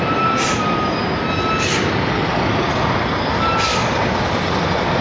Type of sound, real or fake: real